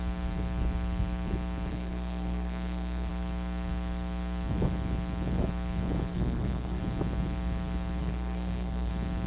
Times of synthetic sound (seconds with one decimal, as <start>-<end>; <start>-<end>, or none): 1.7-3.1; 6.1-6.8; 8.0-8.9

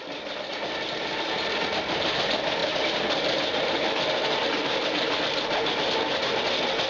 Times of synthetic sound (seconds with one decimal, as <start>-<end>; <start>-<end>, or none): none

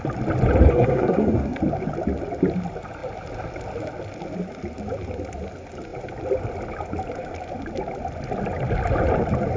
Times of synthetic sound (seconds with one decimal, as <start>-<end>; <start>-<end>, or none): 0.7-1.6